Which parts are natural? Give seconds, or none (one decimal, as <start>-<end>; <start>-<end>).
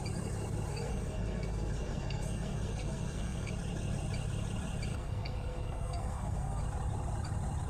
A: 0.0-0.7; 3.5-4.9; 6.6-7.7